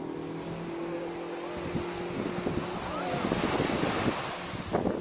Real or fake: real